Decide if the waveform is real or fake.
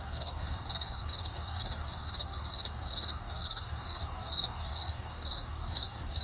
fake